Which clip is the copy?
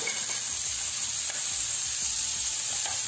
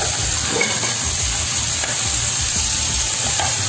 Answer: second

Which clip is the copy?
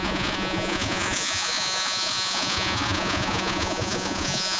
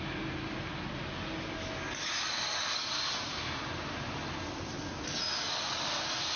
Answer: first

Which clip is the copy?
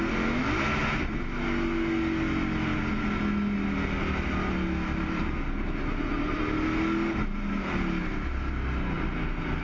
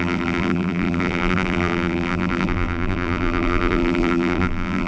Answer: second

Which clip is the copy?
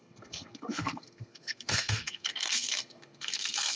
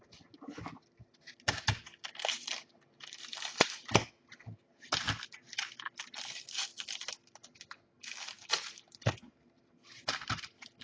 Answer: first